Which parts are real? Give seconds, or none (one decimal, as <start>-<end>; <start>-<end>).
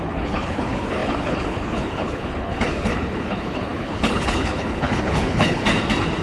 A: 5.6-6.2